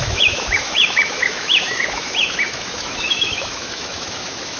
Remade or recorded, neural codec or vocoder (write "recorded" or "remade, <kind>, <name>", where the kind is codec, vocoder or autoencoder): remade, autoencoder, DAC-VAE